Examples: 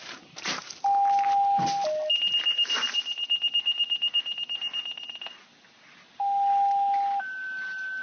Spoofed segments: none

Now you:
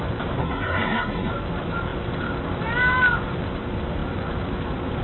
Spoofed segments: 0.4-1.3 (codec, SNAC)

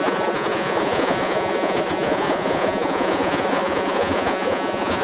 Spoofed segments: 0.0-5.0 (vocoder, Vocos)

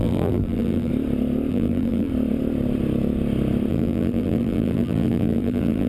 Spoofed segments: 0.0-0.9 (vocoder, BigVGAN v2); 1.5-2.1; 3.7-5.9

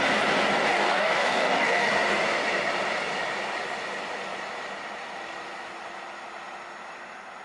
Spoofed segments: 0.7-1.9 (codec, DAC)

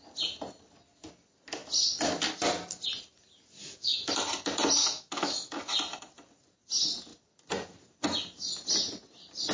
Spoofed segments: 3.6-4.1 (autoencoder, DAC-VAE); 4.8-5.6